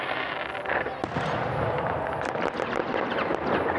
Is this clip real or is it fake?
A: real